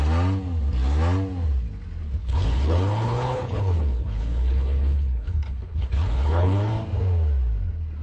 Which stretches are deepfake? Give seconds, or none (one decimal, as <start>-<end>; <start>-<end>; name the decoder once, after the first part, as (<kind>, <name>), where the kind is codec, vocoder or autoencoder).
2.2-6.7 (codec, HILCodec)